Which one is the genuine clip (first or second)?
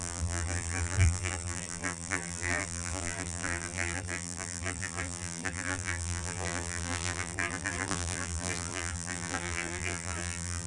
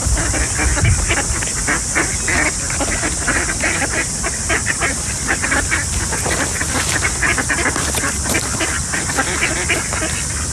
second